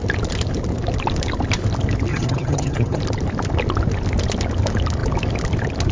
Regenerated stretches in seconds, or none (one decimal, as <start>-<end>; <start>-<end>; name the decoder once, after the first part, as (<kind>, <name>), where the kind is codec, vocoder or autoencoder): 2.1-3.0 (vocoder, HiFi-GAN)